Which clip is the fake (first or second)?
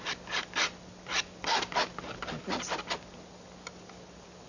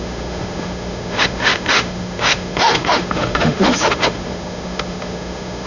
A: second